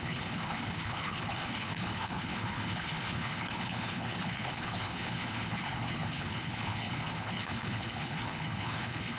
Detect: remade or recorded remade